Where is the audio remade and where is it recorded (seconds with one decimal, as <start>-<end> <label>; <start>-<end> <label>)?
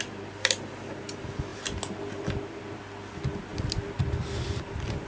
0.0-5.1 recorded